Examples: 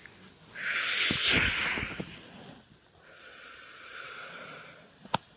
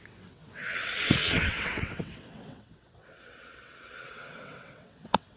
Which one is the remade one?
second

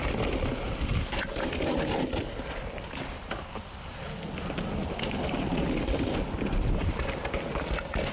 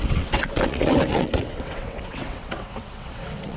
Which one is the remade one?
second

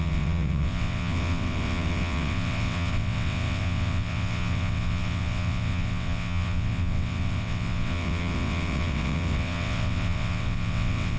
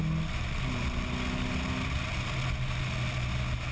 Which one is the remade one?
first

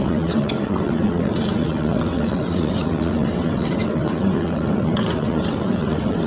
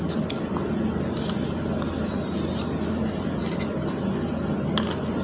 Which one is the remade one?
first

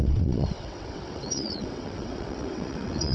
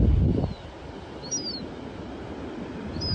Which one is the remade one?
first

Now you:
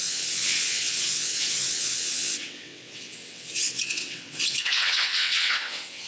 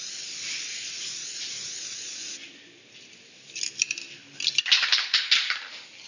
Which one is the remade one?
first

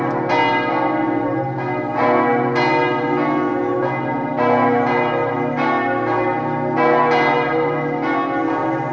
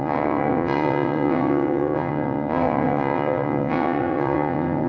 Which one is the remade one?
second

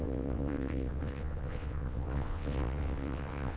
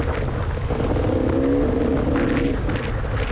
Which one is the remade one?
first